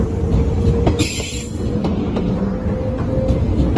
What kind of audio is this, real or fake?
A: real